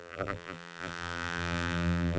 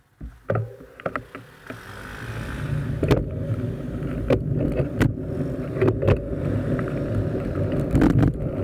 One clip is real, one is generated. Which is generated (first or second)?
first